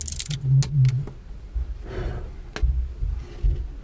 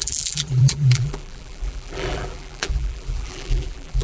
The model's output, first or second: second